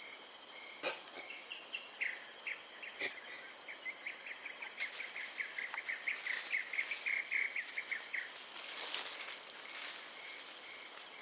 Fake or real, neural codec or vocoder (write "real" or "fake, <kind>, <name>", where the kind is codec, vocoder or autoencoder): real